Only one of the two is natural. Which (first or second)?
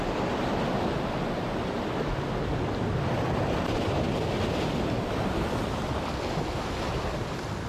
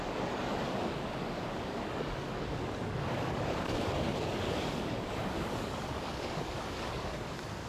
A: first